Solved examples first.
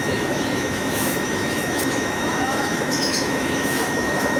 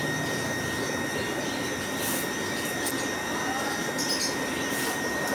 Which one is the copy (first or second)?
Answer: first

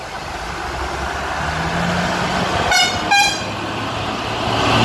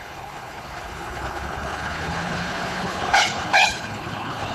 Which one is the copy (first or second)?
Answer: second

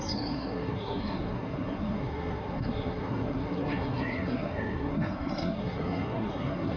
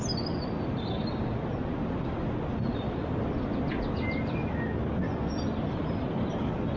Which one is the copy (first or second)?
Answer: first